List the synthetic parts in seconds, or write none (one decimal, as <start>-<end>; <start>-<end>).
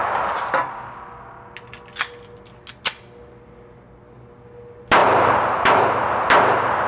5.0-5.8